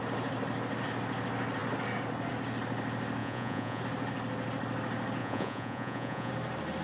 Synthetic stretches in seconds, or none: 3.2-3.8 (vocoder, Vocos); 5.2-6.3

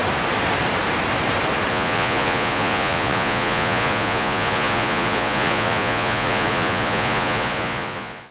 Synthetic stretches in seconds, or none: 1.7-8.3 (vocoder, Vocos)

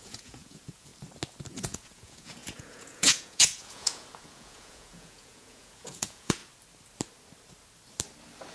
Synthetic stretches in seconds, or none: 0.0-0.9 (vocoder, Vocos); 1.5-6.4

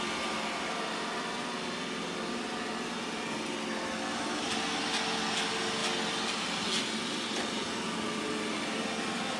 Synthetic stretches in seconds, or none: none

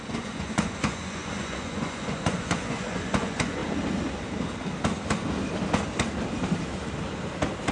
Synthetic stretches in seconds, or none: 0.0-3.6 (vocoder, Vocos)